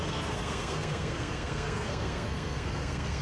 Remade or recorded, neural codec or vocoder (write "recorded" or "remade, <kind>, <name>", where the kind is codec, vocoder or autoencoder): remade, codec, SNAC